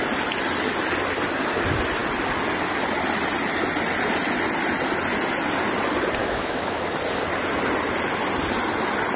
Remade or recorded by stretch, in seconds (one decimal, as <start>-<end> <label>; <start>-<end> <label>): 0.0-6.2 recorded; 6.2-6.9 remade; 6.9-9.2 recorded